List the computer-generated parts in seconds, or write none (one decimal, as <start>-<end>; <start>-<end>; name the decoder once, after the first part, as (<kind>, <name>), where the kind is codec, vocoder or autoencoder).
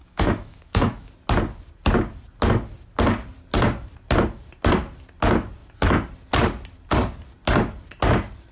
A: 0.0-1.1 (autoencoder, DAC-VAE)